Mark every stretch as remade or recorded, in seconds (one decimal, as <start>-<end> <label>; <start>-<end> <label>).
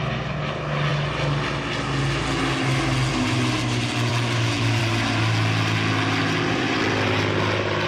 0.0-7.9 recorded